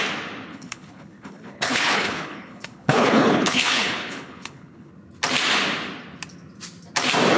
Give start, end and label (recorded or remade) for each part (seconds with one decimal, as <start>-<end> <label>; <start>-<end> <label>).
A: 0.0-0.5 recorded; 0.5-4.9 remade; 4.9-7.4 recorded